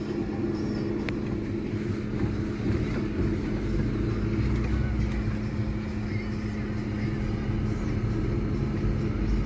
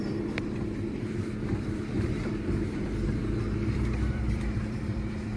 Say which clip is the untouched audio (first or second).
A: first